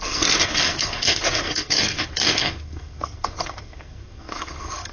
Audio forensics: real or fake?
fake